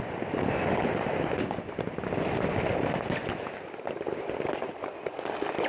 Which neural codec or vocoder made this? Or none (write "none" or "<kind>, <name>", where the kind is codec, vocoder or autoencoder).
none